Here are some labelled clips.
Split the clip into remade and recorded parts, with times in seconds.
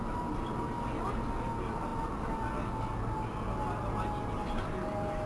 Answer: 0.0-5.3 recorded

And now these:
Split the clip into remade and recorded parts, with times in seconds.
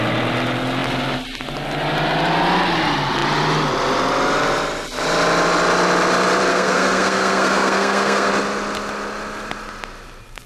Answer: 0.0-6.5 recorded; 6.5-8.3 remade; 8.3-10.5 recorded